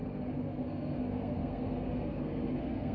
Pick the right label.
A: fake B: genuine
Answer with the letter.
A